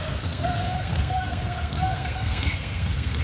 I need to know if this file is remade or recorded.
remade